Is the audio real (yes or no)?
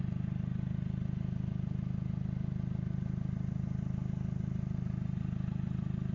yes